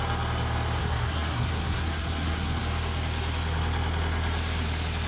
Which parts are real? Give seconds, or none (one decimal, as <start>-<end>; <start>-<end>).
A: 0.0-0.8; 2.6-5.1